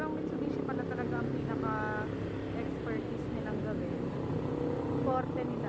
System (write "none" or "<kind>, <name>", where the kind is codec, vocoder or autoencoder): none